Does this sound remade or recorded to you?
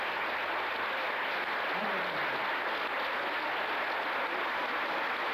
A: recorded